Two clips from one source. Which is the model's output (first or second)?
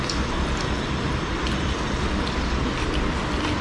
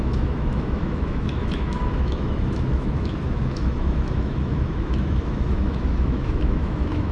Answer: second